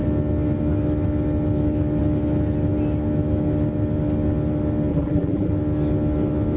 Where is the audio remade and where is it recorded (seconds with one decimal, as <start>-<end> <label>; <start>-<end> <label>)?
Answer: 0.0-4.9 recorded; 4.9-5.5 remade; 5.5-6.6 recorded